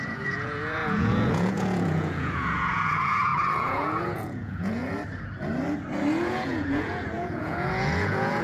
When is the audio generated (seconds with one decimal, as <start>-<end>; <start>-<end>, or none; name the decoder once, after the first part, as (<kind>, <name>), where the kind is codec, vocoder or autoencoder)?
0.0-4.8 (vocoder, Vocos); 6.2-8.4